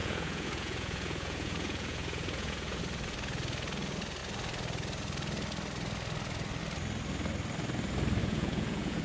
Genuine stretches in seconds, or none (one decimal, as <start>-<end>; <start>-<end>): 2.8-8.2